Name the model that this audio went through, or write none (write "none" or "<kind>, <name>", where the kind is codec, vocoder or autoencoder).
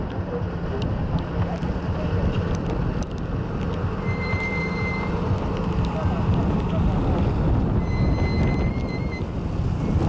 none